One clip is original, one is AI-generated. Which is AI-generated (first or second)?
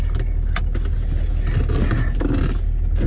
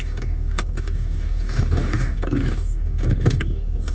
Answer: second